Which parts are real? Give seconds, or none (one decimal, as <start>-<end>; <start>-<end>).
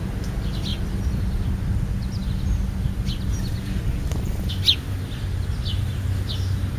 0.0-6.8